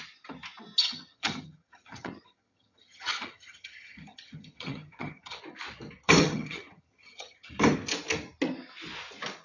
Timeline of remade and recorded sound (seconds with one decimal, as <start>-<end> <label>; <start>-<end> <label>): 0.0-0.8 recorded; 0.8-5.4 remade; 5.4-6.2 recorded; 6.2-7.5 remade; 7.5-9.4 recorded